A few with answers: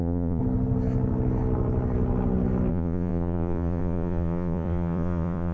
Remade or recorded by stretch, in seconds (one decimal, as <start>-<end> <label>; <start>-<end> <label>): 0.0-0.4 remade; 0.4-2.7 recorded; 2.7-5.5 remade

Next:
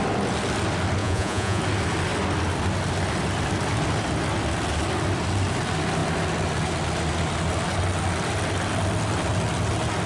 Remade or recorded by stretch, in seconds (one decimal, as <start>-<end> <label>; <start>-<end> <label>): 0.0-1.0 recorded; 1.0-1.6 remade; 1.6-10.1 recorded

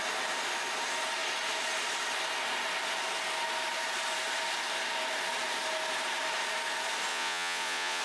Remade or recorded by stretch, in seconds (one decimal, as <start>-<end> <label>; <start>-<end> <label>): 0.0-7.1 recorded; 7.1-8.0 remade